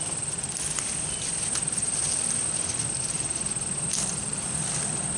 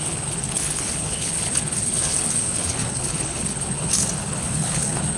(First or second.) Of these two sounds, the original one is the first